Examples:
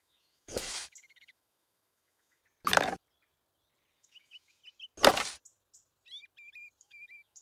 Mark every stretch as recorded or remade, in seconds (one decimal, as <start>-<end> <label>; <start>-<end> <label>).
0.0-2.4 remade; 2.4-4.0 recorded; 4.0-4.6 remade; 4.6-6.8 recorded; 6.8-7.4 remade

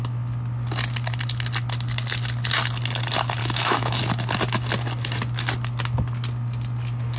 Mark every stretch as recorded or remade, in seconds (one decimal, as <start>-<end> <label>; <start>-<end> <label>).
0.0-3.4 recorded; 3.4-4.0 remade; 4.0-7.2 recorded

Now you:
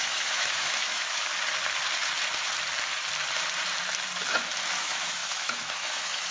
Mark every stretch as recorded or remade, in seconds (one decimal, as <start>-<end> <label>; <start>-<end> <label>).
0.0-1.3 remade; 1.3-4.8 recorded; 4.8-6.3 remade

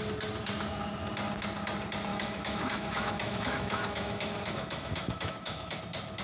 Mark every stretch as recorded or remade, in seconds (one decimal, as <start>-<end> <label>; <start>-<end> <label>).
0.0-2.1 recorded; 2.1-5.8 remade; 5.8-6.2 recorded

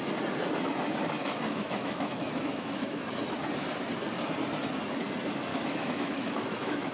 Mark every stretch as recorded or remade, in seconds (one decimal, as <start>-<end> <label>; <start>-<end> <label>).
0.0-1.2 recorded; 1.2-3.1 remade; 3.1-5.5 recorded; 5.5-6.9 remade

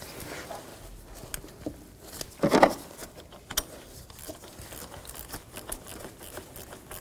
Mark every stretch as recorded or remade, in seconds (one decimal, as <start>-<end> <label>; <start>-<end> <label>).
0.0-7.0 recorded

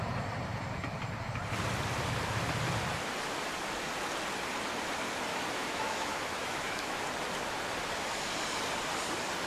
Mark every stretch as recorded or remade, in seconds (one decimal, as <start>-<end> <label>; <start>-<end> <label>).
0.0-5.3 recorded; 5.3-7.0 remade; 7.0-9.5 recorded

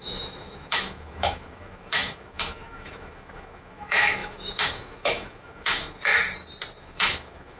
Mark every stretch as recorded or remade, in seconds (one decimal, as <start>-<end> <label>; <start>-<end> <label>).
0.0-6.1 remade; 6.1-6.8 recorded; 6.8-7.6 remade